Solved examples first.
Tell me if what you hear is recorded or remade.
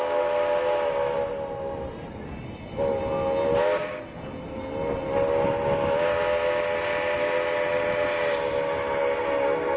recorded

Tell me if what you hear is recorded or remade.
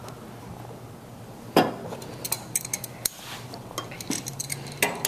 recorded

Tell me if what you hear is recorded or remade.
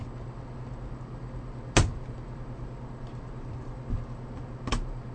recorded